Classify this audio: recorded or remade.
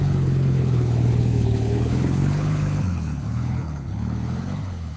remade